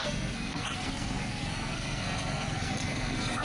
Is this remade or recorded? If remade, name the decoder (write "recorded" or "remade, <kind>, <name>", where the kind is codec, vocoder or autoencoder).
remade, codec, SNAC